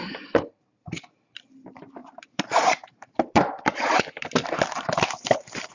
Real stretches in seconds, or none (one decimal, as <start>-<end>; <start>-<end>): none

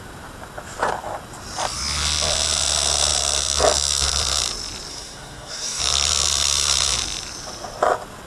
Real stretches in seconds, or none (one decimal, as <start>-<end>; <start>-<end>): 0.0-4.9; 5.8-8.3

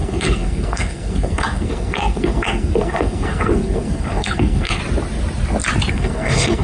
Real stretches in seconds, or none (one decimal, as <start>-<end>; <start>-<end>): 4.8-5.9

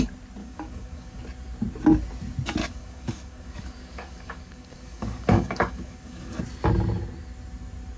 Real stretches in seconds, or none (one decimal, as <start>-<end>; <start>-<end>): 0.0-0.4; 1.2-2.6; 6.4-8.0

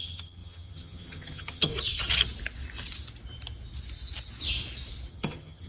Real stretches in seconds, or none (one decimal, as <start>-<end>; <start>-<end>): 1.7-5.1